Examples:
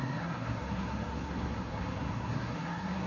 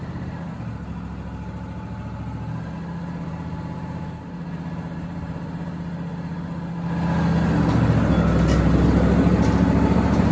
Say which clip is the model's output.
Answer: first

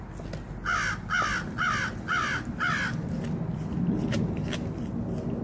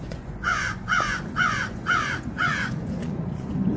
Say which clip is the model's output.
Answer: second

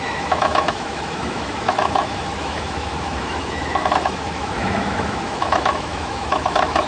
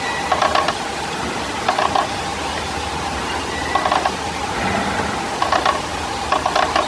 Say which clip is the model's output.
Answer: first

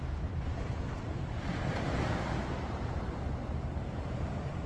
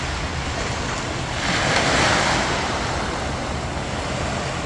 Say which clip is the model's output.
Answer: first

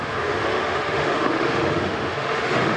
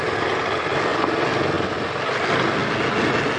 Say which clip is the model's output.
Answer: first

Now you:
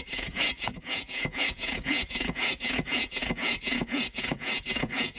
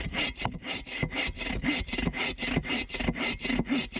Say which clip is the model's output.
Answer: first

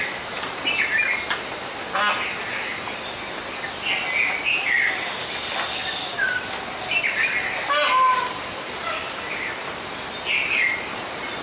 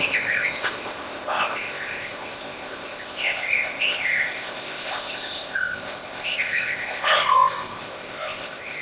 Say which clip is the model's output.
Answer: second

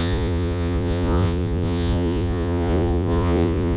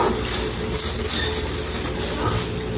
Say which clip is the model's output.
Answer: first